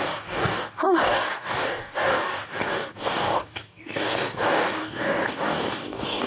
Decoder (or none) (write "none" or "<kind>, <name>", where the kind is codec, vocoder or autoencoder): codec, DAC